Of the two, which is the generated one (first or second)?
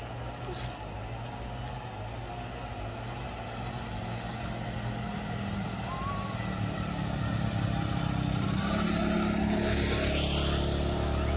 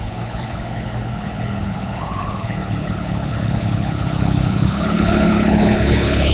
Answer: second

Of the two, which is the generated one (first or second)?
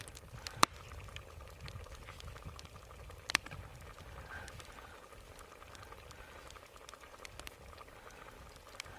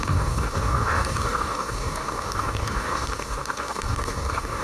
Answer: second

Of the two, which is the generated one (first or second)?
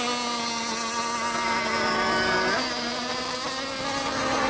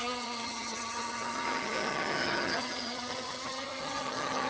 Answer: second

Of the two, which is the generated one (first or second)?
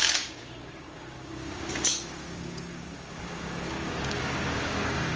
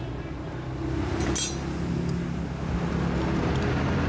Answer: first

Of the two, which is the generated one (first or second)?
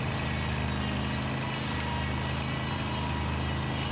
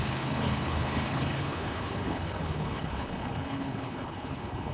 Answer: second